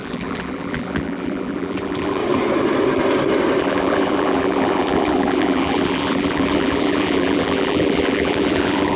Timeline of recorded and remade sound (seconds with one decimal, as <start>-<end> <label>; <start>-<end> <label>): 0.0-2.2 remade; 2.2-3.6 recorded; 3.6-9.0 remade